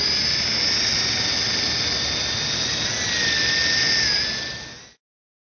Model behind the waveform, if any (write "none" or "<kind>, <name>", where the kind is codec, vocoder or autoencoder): none